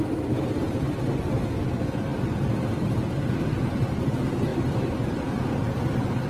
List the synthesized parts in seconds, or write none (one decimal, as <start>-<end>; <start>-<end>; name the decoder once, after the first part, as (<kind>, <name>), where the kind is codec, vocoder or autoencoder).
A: none